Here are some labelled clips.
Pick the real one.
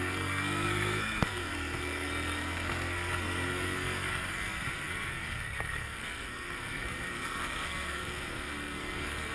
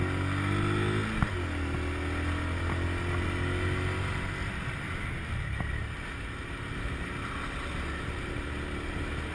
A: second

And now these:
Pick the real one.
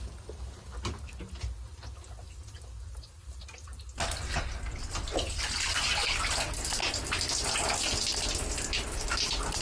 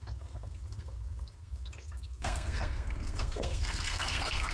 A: first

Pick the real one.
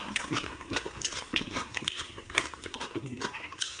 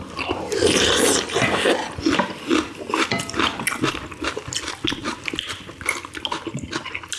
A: second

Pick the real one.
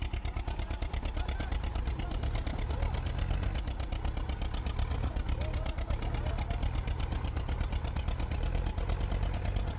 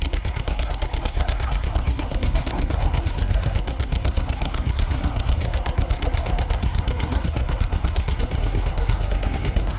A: first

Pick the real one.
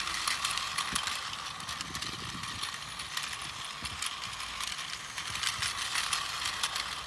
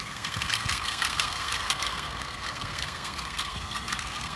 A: first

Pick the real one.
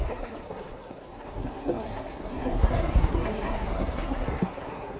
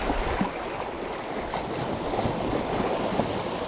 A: second